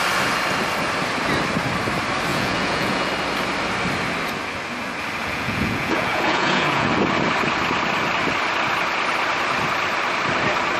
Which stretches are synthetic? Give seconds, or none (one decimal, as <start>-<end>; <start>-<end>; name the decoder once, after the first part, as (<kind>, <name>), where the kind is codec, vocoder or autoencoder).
2.3-3.1 (vocoder, Vocos); 5.2-6.9